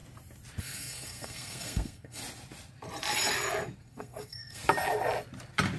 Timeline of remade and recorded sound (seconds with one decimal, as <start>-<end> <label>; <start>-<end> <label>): 0.0-0.6 recorded; 0.6-2.2 remade; 2.2-3.8 recorded; 3.8-4.6 remade; 4.6-5.8 recorded